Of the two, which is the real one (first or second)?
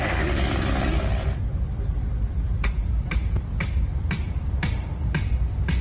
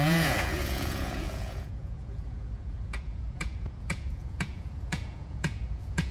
first